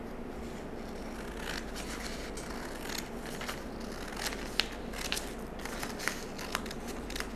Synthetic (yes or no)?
no